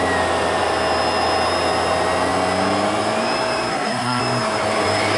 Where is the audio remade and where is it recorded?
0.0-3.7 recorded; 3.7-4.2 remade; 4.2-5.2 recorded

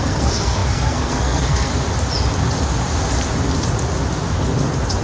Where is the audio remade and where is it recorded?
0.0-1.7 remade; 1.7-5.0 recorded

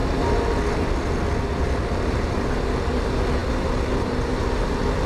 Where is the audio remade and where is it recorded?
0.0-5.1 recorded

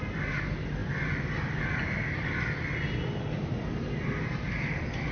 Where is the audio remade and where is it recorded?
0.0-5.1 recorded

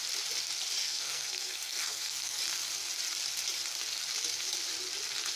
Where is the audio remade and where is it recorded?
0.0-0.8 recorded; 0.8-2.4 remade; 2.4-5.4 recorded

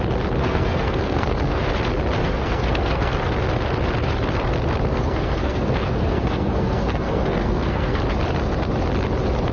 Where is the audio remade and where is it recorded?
0.0-0.4 recorded; 0.4-1.6 remade; 1.6-2.2 recorded; 2.2-3.2 remade; 3.2-4.9 recorded; 4.9-8.0 remade; 8.0-9.5 recorded

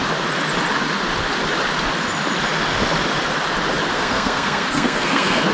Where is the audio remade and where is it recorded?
0.0-3.9 recorded; 3.9-5.5 remade